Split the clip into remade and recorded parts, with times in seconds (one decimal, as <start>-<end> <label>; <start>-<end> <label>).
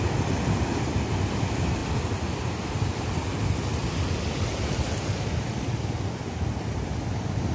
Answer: 0.0-7.5 recorded